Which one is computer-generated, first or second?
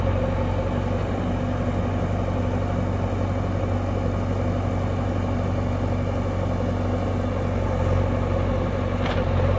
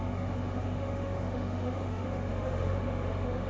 second